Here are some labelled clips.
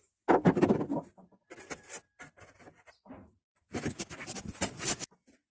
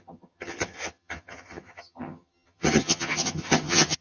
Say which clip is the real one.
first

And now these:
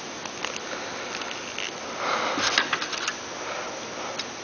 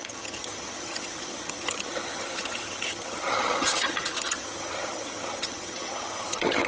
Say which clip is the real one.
first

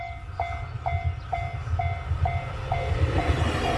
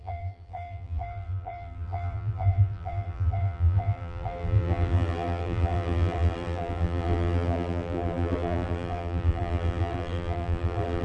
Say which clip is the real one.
first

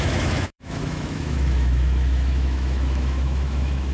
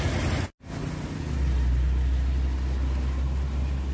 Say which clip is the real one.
second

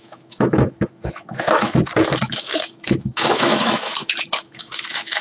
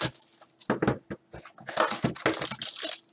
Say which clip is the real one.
second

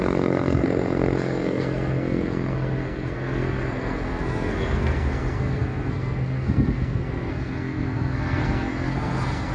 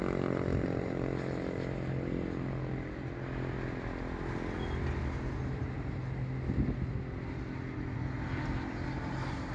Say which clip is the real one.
second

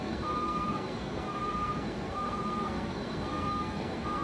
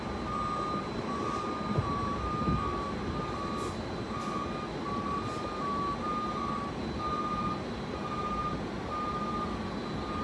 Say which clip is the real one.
second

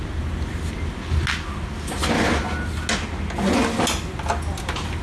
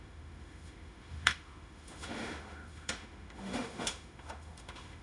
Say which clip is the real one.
first